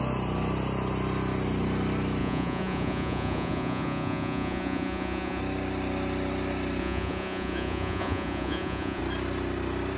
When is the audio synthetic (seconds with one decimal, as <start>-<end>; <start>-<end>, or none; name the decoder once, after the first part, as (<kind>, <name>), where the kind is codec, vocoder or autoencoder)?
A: 2.2-5.4 (vocoder, Vocos); 6.8-9.0